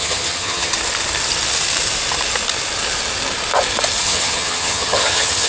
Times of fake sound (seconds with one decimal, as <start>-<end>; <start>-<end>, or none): 0.0-0.7; 4.0-5.5

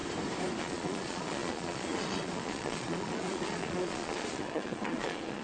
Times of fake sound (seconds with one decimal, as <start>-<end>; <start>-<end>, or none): 0.6-5.4

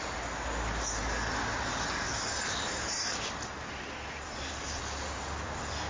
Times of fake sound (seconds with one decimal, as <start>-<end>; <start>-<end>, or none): none

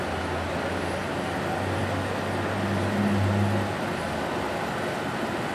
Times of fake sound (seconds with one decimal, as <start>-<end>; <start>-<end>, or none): none

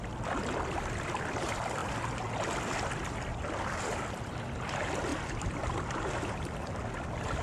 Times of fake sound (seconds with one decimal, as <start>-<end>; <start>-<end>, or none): 5.1-6.3

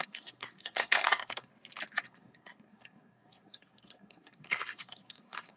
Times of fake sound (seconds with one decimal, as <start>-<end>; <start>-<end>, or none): 0.0-1.5; 2.0-5.6

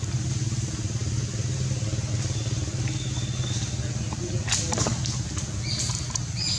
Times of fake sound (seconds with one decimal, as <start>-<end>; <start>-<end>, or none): none

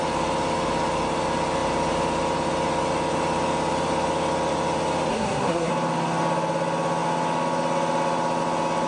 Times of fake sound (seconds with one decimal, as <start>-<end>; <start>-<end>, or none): 5.1-5.7